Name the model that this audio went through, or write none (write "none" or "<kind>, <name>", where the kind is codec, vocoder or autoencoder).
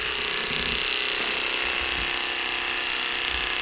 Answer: none